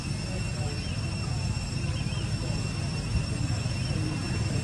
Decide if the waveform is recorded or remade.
recorded